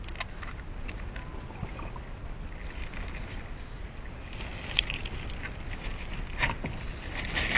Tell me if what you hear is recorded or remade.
recorded